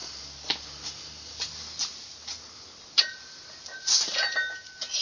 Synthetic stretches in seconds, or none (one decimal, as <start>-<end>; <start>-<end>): none